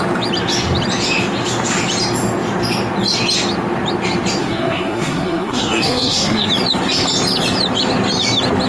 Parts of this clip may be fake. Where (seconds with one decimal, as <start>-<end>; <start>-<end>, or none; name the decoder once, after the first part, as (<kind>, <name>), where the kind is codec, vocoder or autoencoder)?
4.4-6.5 (codec, SNAC)

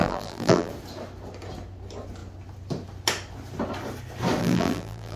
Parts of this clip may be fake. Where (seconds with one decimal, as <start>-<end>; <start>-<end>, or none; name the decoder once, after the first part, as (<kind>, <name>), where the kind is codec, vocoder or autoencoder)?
0.0-0.7 (vocoder, BigVGAN v2); 4.4-5.2

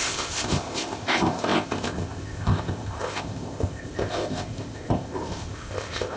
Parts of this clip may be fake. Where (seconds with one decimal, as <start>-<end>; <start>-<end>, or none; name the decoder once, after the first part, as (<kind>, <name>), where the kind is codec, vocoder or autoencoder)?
0.0-6.2 (codec, ZipCodec)

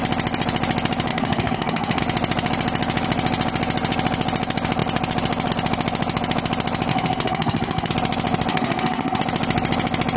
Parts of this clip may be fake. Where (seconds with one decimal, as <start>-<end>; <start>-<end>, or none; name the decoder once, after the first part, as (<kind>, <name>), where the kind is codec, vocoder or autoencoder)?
1.1-2.0 (codec, SNAC); 6.9-7.9; 8.5-9.2